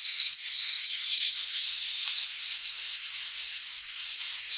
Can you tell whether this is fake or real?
fake